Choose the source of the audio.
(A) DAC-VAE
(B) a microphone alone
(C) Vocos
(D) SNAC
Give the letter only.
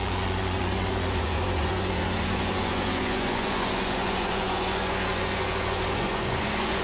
C